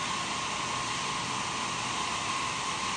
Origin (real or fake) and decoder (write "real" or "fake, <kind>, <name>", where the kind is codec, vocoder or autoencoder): fake, vocoder, BigVGAN v2